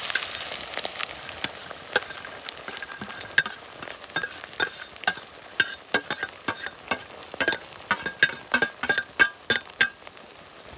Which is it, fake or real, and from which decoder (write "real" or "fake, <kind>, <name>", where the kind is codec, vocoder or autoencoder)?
real